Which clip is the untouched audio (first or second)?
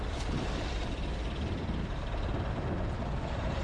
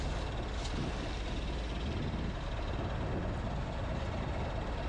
second